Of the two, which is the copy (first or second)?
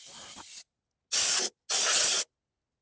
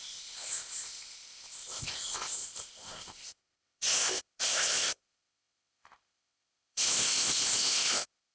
second